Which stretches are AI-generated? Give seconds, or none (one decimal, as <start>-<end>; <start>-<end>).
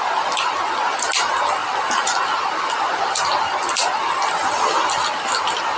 none